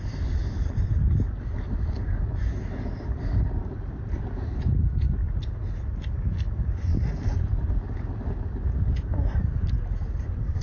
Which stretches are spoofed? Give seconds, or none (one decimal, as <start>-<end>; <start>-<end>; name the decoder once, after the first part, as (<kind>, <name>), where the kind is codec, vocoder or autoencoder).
0.4-5.6 (vocoder, BigVGAN v2); 6.9-10.6